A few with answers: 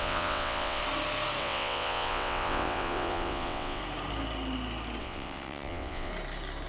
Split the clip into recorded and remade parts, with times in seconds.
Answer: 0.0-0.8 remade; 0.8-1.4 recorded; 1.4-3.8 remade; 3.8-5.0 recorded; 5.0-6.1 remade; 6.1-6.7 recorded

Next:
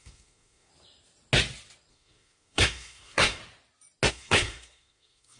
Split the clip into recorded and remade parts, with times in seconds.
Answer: 0.0-0.7 remade; 0.7-1.9 recorded; 1.9-3.4 remade; 3.4-4.1 recorded; 4.1-5.4 remade